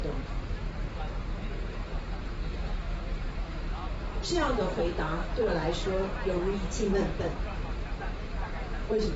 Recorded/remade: remade